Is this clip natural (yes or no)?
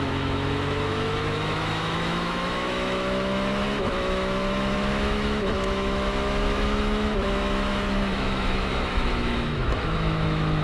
no